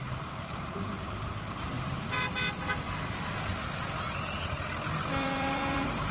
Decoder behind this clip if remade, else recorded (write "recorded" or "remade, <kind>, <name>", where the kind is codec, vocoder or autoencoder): remade, vocoder, BigVGAN v2